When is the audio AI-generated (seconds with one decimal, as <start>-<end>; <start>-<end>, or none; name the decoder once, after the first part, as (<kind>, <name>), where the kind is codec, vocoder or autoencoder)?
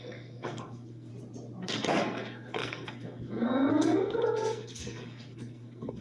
0.0-1.1 (codec, SNAC); 1.6-6.0